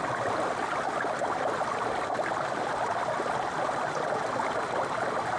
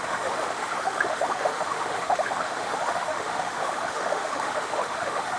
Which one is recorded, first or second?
first